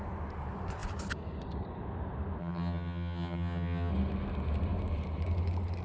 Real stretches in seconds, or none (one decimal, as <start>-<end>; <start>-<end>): 0.0-2.4; 3.9-5.8